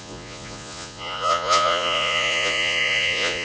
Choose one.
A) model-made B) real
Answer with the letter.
A